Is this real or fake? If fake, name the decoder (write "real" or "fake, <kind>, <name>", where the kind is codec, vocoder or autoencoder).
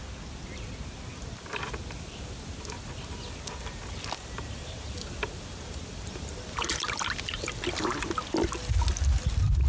real